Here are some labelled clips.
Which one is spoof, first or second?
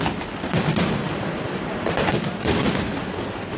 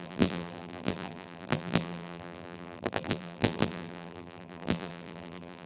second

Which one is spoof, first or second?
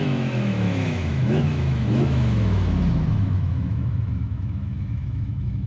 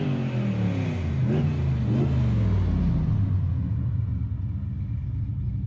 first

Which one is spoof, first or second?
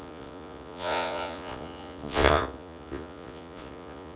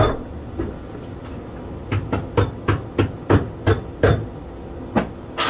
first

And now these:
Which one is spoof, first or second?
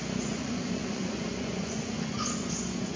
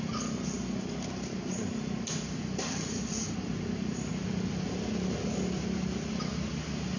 first